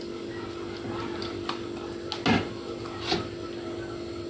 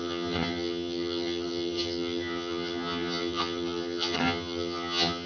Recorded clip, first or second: first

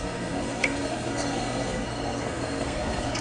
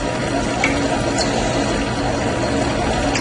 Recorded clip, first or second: second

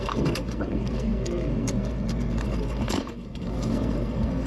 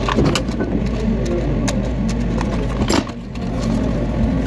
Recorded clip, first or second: second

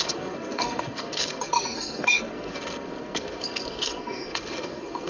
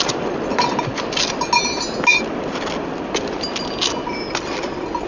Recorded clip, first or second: second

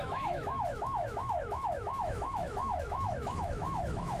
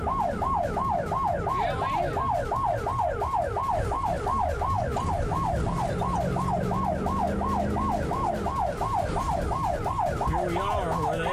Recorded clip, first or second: second